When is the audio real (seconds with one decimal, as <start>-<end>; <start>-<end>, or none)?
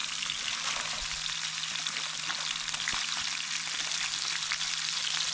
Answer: 0.0-5.3